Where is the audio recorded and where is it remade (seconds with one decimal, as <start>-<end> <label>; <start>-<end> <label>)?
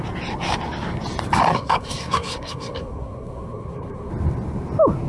0.0-1.5 recorded; 1.5-4.1 remade; 4.1-5.1 recorded